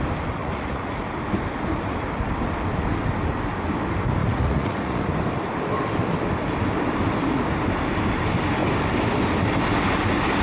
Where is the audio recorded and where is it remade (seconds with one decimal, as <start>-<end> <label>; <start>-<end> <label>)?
0.0-0.4 recorded; 0.4-1.0 remade; 1.0-4.2 recorded; 4.2-5.0 remade; 5.0-10.4 recorded